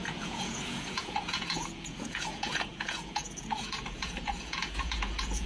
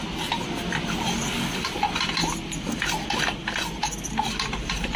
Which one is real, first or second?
second